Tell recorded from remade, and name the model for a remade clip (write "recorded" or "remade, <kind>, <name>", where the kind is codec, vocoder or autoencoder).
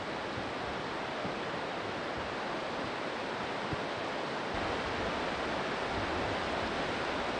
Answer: recorded